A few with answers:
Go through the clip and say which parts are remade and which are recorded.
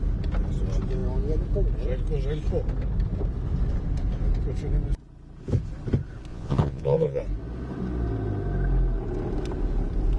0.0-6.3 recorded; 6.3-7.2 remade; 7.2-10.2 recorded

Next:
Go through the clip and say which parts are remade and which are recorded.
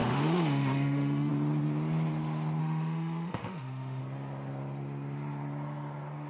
0.0-1.3 remade; 1.3-2.6 recorded; 2.6-4.0 remade; 4.0-6.3 recorded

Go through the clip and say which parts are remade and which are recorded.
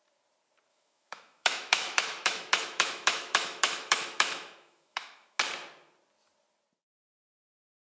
0.0-0.7 recorded; 0.7-5.4 remade; 5.4-7.8 recorded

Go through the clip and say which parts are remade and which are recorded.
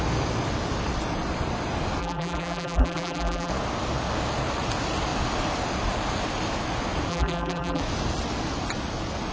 0.0-2.0 recorded; 2.0-3.5 remade; 3.5-7.1 recorded; 7.1-7.8 remade; 7.8-9.3 recorded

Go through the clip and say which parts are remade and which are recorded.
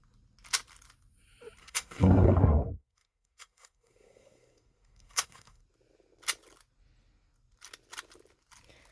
0.0-1.6 recorded; 1.6-5.6 remade; 5.6-8.9 recorded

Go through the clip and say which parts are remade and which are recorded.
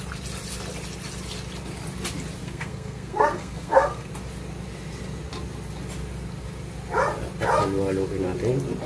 0.0-2.4 recorded; 2.4-4.1 remade; 4.1-8.9 recorded